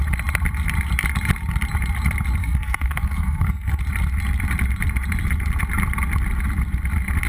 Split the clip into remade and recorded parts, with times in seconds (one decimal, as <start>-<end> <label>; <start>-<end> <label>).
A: 0.0-2.4 recorded; 2.4-3.8 remade; 3.8-7.3 recorded